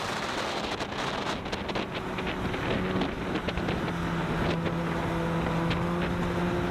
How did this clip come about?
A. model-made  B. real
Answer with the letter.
B